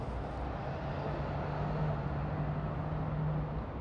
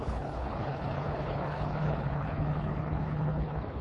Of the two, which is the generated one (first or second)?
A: second